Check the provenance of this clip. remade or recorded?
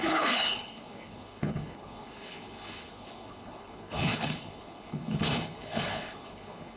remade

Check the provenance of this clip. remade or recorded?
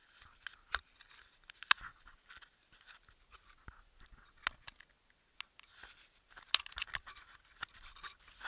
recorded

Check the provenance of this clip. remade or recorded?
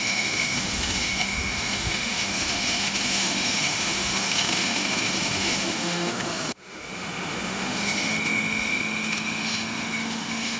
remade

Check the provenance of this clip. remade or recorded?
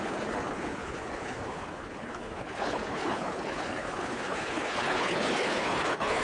remade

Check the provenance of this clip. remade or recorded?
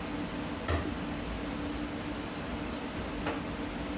recorded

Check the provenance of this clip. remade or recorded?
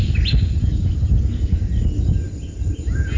recorded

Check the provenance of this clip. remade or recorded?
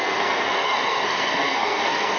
remade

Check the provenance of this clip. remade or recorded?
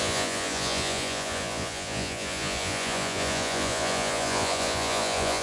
remade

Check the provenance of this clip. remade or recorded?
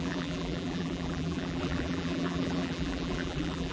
remade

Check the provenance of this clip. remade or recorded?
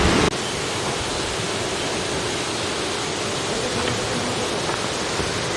recorded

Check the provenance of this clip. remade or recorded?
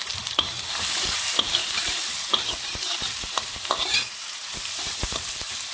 remade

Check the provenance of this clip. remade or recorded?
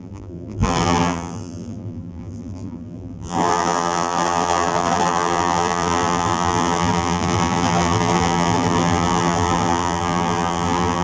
remade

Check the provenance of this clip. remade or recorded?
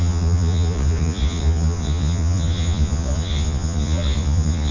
remade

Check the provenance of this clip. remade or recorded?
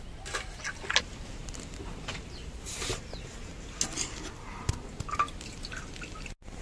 recorded